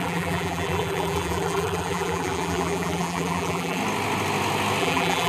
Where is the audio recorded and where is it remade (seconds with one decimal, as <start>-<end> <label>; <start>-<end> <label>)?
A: 0.0-3.8 remade; 3.8-4.8 recorded; 4.8-5.3 remade